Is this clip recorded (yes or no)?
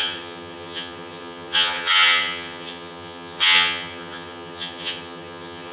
no